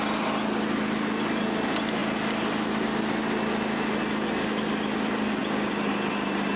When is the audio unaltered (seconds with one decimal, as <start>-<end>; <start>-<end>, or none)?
0.0-6.6